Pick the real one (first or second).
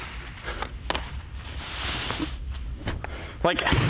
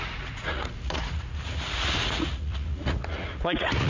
first